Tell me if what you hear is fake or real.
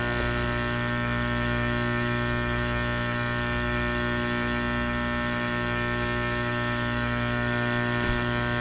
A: fake